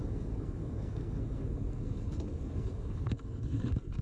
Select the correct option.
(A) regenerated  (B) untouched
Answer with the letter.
A